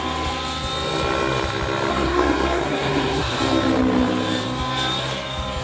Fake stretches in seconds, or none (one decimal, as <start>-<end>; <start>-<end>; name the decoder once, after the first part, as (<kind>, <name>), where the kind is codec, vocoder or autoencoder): 1.9-3.4 (codec, SNAC)